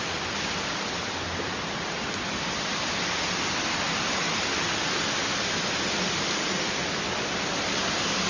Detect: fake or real real